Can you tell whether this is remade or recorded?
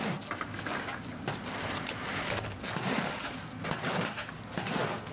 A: recorded